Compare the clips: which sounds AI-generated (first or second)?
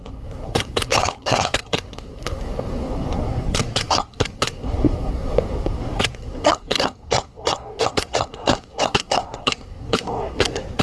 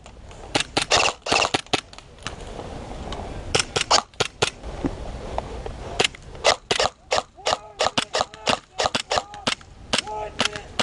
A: first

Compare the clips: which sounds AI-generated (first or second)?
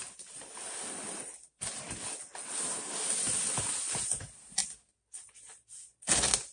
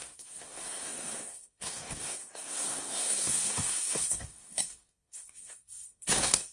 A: second